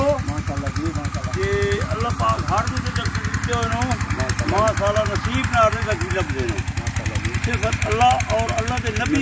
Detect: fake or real real